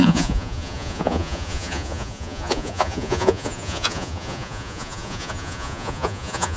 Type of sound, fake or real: fake